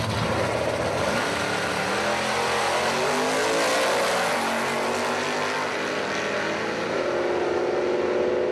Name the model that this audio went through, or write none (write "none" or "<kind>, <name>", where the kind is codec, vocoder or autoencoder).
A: none